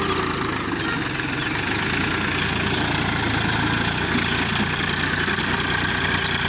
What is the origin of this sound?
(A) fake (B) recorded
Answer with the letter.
B